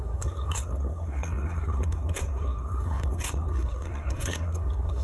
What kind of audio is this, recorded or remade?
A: remade